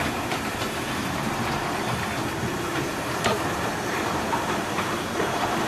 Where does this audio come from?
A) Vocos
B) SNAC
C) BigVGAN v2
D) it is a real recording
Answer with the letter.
C